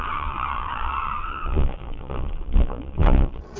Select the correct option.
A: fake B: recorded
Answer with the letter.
A